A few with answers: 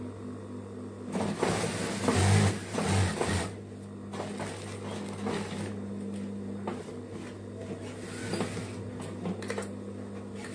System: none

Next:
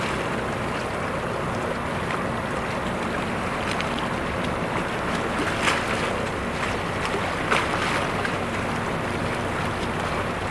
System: none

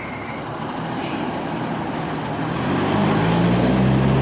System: none